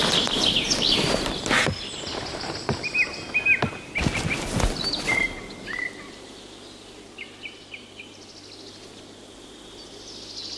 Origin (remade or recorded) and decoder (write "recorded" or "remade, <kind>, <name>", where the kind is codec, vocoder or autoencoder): recorded